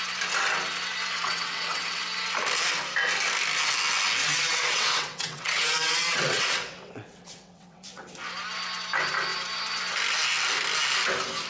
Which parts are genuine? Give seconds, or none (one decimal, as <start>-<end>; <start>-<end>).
0.0-1.2; 2.0-4.2; 8.1-11.5